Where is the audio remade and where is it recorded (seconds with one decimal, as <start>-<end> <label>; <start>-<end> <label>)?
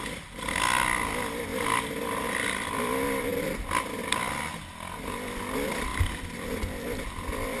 0.0-7.6 recorded